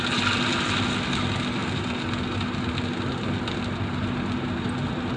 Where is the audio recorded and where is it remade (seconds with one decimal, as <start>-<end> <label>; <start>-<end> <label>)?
0.0-5.2 recorded